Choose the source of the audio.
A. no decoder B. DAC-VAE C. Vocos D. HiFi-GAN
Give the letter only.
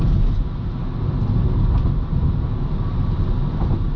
A